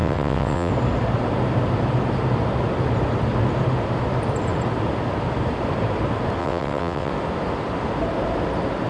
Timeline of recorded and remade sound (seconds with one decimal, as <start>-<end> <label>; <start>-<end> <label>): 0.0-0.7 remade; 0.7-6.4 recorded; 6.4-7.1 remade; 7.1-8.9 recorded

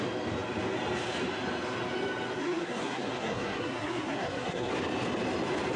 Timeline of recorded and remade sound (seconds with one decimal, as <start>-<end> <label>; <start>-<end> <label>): 0.0-2.4 recorded; 2.4-4.7 remade; 4.7-5.8 recorded

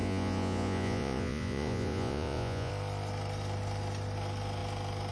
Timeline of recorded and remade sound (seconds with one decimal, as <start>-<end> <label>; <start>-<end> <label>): 0.0-2.7 remade; 2.7-5.1 recorded

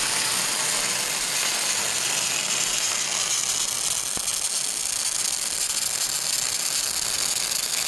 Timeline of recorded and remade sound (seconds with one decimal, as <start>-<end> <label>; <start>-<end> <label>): 0.0-7.9 recorded